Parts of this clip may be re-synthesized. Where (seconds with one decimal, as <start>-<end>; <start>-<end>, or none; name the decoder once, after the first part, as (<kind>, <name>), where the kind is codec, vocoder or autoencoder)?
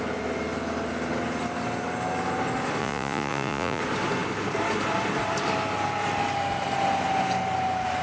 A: 2.8-3.8 (vocoder, Vocos)